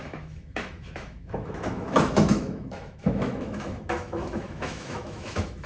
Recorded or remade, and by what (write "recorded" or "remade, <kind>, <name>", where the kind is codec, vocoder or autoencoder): remade, autoencoder, DAC-VAE